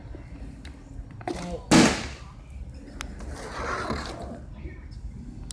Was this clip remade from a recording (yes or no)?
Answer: no